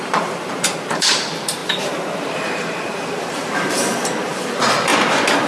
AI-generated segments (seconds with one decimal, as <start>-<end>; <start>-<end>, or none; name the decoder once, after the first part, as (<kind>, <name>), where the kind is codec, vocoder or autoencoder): 0.0-4.9 (vocoder, BigVGAN v2)